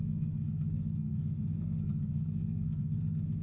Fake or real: fake